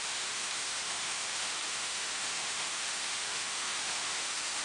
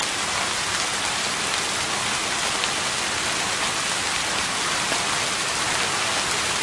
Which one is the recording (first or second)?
second